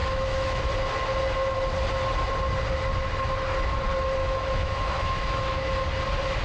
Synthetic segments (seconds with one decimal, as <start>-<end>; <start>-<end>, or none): 0.0-0.7; 4.2-5.7

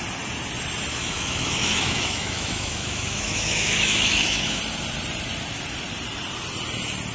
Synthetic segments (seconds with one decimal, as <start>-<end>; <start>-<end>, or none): 0.9-4.6